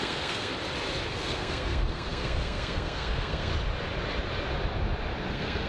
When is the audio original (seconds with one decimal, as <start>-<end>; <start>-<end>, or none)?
0.5-1.1; 3.5-5.3